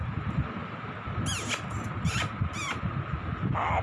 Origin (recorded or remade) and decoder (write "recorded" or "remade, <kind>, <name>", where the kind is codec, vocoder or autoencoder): recorded